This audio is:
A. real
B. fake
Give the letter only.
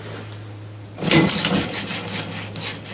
A